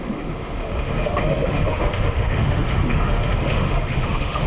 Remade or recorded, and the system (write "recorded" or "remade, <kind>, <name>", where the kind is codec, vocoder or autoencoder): remade, autoencoder, DAC-VAE